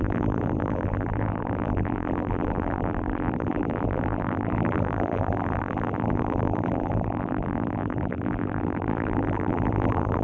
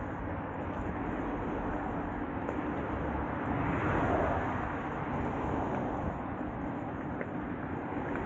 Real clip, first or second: second